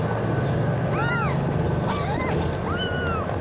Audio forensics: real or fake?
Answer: real